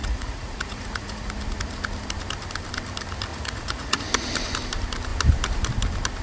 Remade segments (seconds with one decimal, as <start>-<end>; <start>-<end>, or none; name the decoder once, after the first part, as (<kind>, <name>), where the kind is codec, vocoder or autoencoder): 0.0-1.3 (vocoder, Vocos); 3.3-4.0